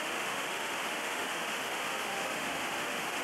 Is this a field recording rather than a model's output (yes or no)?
no